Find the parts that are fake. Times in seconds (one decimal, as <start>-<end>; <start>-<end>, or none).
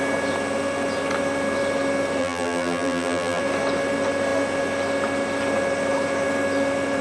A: 2.2-3.4